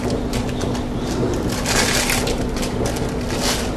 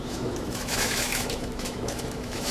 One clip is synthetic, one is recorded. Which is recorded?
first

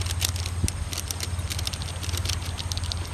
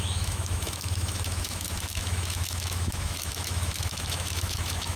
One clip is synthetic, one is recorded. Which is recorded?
first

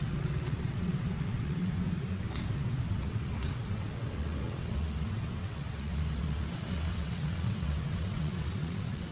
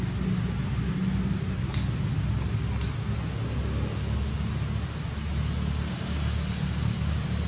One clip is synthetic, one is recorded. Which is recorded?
second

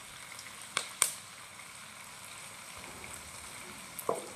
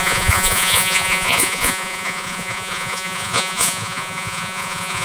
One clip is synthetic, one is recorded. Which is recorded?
first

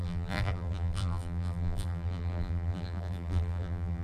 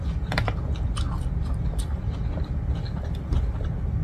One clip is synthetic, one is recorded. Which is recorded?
second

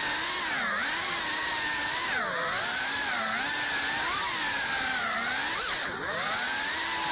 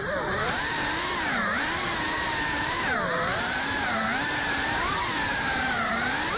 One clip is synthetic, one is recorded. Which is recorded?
first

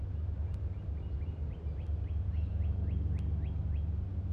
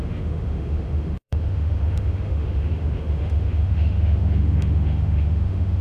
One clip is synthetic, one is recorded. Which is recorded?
first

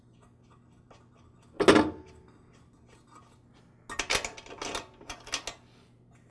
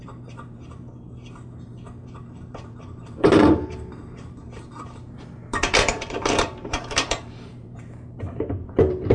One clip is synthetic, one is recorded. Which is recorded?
first